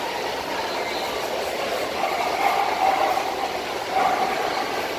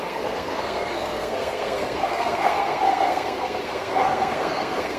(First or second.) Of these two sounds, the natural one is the first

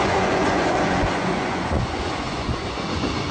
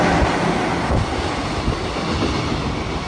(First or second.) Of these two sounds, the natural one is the second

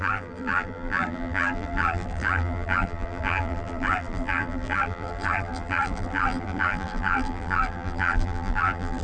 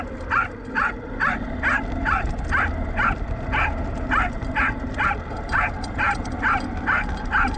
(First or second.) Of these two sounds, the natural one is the second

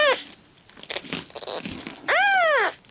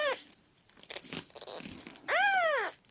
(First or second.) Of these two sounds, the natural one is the first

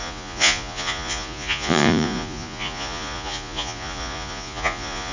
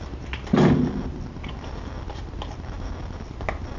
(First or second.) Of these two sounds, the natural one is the second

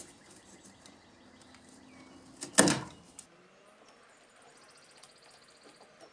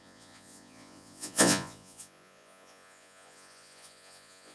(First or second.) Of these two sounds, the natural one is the first